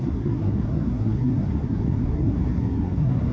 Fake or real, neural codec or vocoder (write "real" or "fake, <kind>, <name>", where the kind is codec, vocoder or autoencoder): fake, codec, SNAC